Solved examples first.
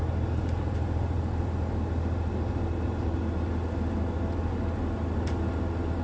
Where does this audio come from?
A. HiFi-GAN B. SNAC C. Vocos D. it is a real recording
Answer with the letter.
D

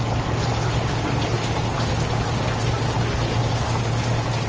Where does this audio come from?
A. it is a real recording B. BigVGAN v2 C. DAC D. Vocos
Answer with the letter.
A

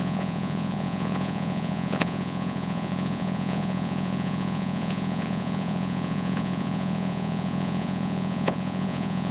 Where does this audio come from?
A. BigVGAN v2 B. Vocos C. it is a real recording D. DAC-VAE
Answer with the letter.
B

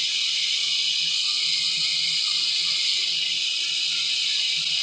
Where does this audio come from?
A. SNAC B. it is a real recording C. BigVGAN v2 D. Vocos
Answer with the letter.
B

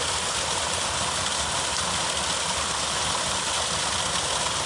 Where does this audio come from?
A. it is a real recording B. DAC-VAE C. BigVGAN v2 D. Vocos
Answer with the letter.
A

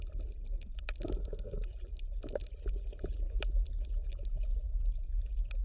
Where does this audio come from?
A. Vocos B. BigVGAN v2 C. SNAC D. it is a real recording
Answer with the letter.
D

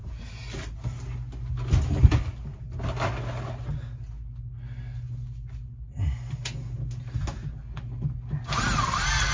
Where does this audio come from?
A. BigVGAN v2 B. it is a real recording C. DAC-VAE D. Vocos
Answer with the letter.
B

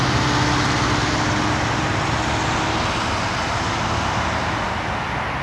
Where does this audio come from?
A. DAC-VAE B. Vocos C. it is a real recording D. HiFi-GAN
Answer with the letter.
C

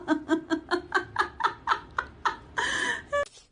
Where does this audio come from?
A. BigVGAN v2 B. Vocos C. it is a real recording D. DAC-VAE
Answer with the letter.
C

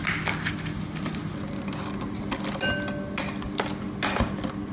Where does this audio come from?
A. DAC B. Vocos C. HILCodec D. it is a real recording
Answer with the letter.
D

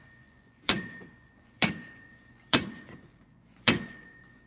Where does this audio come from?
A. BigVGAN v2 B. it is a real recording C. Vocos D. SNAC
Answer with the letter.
C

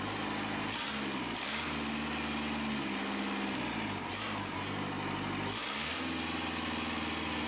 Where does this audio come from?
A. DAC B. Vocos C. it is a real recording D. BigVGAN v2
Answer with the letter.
C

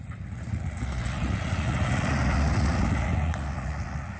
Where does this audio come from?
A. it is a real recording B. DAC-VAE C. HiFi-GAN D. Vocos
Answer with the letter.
D